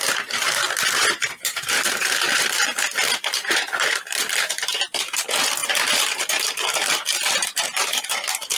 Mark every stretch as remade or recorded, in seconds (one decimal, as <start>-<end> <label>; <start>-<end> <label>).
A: 0.0-8.6 remade